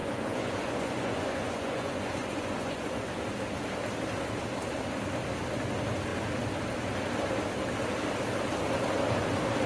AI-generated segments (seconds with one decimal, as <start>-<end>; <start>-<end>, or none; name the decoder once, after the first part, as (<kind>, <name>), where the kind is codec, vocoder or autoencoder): 0.0-3.2 (vocoder, Vocos)